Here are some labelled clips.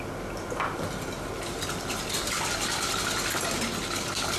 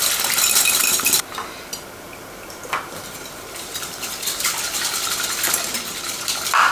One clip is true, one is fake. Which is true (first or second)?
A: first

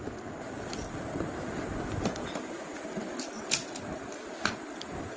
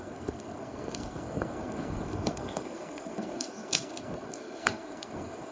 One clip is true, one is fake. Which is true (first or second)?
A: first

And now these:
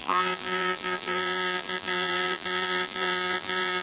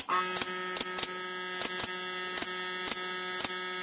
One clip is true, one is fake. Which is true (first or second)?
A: second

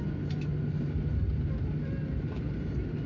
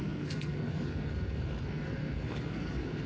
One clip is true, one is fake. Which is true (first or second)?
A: first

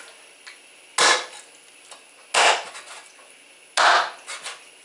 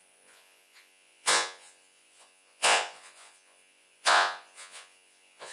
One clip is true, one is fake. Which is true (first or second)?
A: first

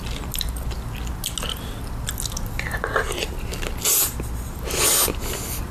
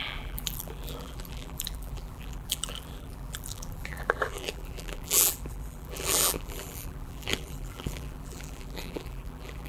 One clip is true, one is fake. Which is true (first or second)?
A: first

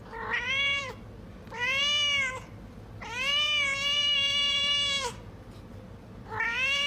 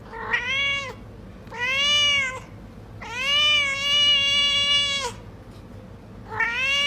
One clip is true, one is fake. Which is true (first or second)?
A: second